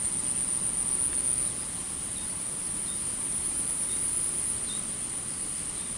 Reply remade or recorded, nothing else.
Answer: recorded